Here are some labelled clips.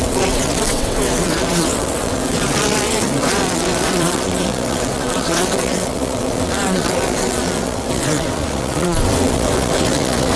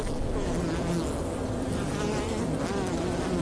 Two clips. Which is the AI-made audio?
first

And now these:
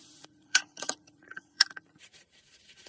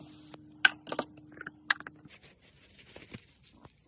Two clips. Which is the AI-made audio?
first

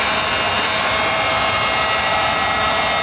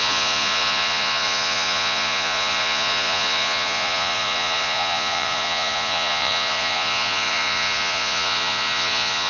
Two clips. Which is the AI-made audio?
second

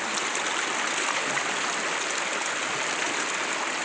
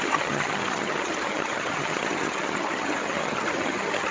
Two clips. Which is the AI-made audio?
second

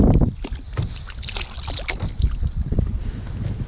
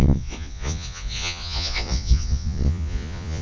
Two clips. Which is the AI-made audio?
second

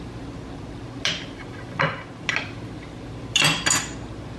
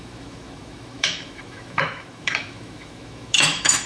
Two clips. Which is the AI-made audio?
second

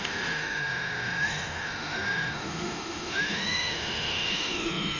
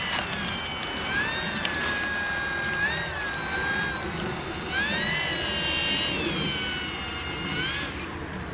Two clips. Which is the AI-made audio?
first